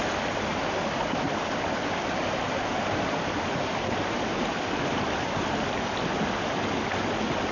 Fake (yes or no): no